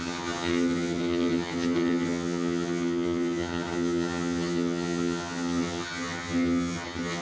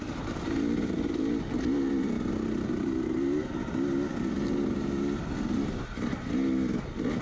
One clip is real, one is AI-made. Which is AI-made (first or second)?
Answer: first